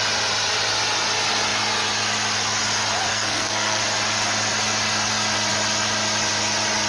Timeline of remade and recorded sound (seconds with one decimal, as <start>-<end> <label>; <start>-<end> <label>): 0.0-3.1 recorded; 3.1-3.8 remade; 3.8-6.9 recorded